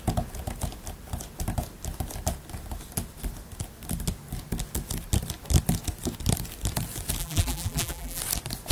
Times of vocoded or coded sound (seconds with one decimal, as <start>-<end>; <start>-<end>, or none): 7.2-8.2